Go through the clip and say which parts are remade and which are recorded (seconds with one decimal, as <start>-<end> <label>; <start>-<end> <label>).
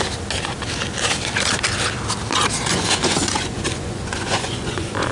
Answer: 0.0-2.7 recorded; 2.7-5.1 remade